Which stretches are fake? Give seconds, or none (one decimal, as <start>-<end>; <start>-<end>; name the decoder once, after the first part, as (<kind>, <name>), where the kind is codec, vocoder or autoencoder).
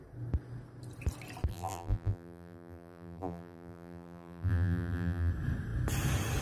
1.5-5.3 (vocoder, BigVGAN v2)